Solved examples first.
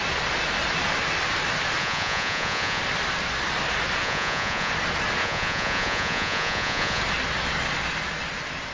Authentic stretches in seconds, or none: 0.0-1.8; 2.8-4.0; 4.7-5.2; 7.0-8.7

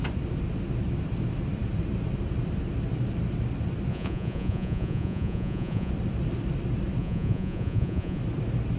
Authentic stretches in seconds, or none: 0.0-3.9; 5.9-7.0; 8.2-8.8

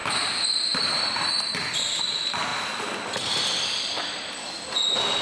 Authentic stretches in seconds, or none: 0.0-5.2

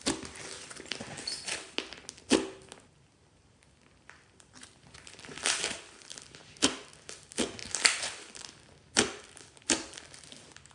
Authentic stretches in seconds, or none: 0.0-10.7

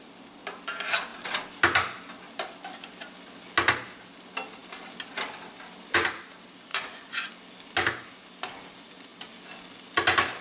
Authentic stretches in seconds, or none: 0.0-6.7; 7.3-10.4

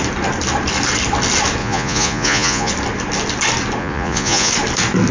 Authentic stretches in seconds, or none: 0.0-1.6; 2.7-3.8; 4.5-5.1

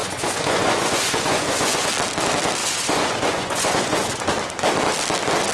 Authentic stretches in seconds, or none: 1.9-2.6; 4.3-5.5